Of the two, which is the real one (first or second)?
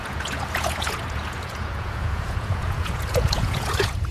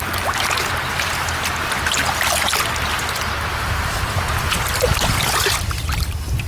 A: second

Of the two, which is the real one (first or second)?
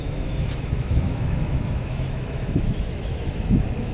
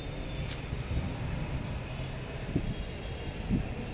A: second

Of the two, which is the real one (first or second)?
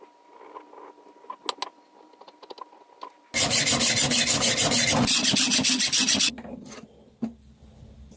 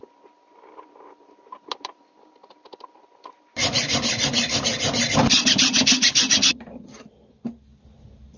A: first